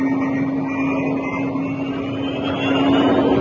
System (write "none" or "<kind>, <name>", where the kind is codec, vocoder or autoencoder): none